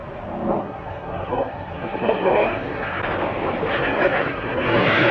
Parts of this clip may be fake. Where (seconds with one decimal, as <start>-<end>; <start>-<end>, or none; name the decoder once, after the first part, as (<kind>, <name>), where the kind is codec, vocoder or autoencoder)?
0.6-3.0 (codec, SNAC); 3.7-5.1